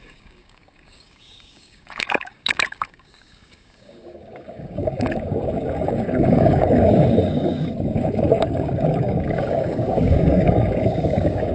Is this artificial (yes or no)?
yes